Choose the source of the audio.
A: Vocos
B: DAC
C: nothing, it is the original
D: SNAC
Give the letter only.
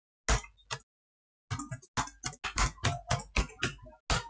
C